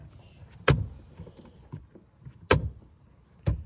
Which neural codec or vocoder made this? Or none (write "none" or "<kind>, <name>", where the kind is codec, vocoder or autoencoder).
none